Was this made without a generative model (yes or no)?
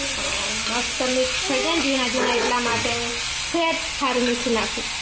yes